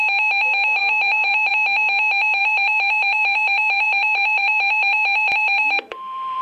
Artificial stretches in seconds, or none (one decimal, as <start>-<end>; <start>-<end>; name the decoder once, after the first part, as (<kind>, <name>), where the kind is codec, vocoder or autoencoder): 0.8-1.5 (vocoder, BigVGAN v2); 2.4-6.4

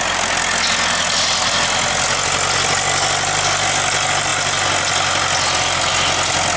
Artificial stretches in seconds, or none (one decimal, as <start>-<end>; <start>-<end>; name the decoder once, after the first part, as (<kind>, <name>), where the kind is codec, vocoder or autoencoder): none

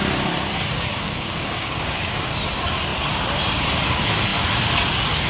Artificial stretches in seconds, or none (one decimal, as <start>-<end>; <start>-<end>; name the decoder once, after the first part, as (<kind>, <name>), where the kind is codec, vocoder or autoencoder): 0.9-2.3 (codec, DAC)

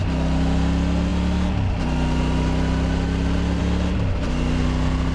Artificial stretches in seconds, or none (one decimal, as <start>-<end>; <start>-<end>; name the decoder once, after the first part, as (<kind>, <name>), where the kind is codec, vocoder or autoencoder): none